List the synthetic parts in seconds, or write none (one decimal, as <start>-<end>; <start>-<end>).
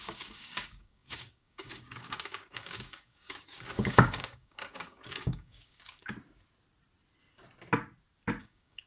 0.0-6.0; 8.4-8.9